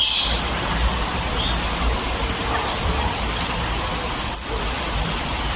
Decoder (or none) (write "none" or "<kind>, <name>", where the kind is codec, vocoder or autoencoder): none